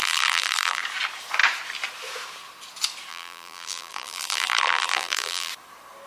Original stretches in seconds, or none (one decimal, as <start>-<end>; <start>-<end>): 0.8-3.1; 5.5-6.1